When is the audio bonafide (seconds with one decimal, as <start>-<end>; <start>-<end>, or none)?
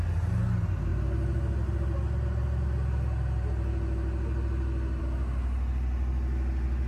0.0-6.9